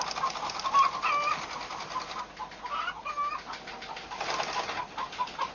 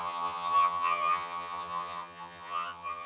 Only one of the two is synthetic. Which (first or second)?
second